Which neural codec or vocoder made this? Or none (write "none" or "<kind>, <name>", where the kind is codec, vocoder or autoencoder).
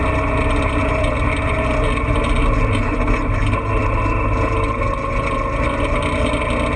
none